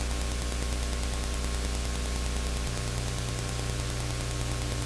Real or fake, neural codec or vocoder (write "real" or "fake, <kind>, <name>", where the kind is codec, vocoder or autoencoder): real